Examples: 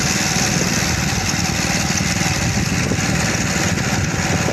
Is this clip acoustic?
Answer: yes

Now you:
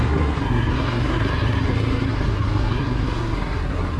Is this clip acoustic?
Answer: no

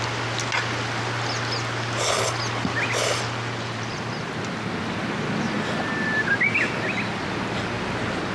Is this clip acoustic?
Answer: yes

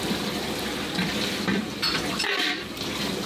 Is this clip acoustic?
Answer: no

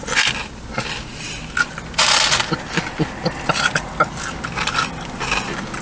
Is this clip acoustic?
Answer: yes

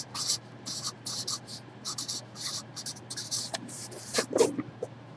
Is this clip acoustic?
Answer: no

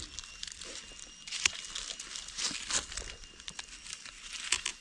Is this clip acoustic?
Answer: yes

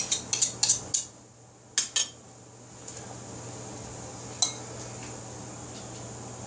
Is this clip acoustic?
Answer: yes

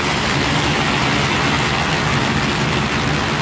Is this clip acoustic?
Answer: yes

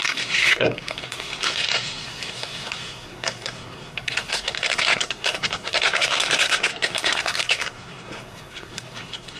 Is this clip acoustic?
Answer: no